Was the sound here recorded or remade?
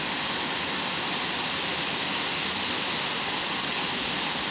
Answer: recorded